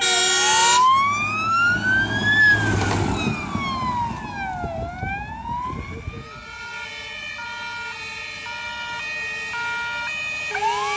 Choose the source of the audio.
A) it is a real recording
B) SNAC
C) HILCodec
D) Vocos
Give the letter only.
A